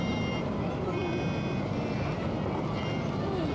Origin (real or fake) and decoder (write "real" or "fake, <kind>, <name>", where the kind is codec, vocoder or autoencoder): real